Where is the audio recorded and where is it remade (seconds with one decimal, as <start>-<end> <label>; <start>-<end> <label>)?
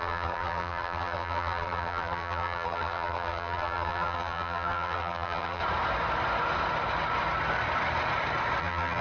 0.0-5.6 remade; 5.6-8.6 recorded; 8.6-9.0 remade